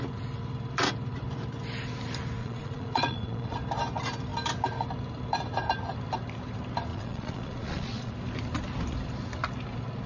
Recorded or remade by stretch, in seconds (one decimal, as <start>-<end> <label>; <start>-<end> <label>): 0.0-2.4 recorded; 2.4-3.6 remade; 3.6-6.9 recorded; 6.9-8.1 remade; 8.1-10.1 recorded

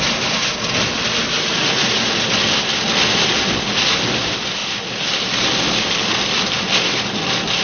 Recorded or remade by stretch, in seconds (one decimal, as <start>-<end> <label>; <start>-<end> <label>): 0.0-4.6 recorded; 4.6-5.3 remade; 5.3-7.6 recorded